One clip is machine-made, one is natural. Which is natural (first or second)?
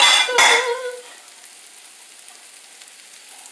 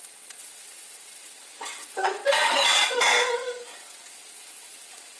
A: first